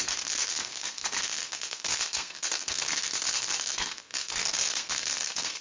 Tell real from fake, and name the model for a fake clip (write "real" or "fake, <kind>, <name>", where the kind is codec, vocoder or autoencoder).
fake, codec, SNAC